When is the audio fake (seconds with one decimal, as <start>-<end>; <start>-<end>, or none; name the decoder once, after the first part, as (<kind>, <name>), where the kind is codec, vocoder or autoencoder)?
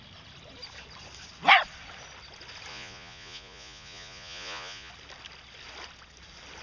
2.7-4.9 (vocoder, Vocos)